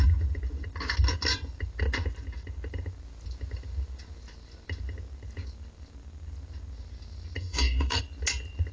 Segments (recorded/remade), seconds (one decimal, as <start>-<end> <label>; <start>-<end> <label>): 0.0-7.4 recorded; 7.4-8.0 remade; 8.0-8.7 recorded